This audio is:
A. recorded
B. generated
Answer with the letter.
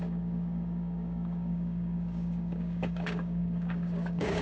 B